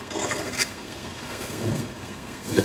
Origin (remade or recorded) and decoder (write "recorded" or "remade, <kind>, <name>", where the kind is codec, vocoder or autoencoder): remade, codec, SNAC